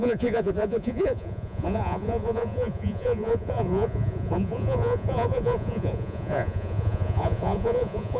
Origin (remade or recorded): remade